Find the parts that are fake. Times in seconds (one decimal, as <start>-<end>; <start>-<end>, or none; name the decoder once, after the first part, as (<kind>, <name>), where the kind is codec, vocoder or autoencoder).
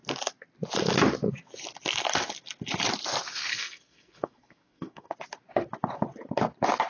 3.5-5.1 (codec, SNAC)